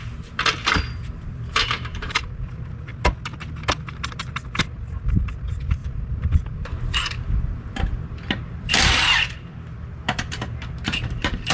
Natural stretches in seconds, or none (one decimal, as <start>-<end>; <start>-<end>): 2.9-3.6; 9.5-10.7